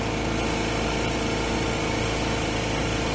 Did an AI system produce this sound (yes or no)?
no